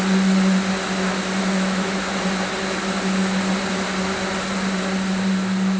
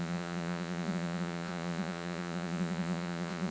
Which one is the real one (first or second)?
first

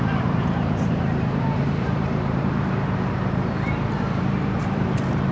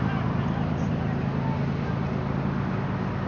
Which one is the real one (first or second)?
second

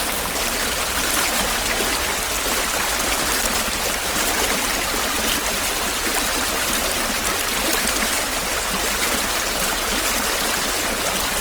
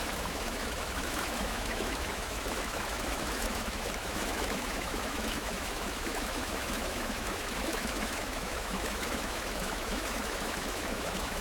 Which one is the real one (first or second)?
first